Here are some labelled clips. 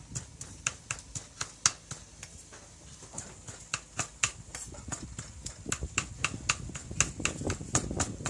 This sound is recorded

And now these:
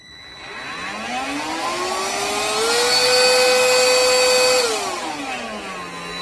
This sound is recorded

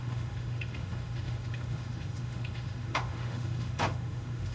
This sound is remade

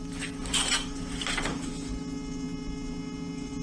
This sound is recorded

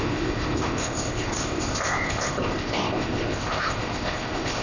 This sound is remade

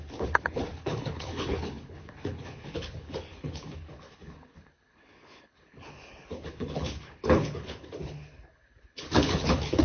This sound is remade